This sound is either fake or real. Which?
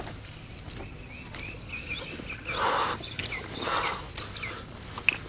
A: real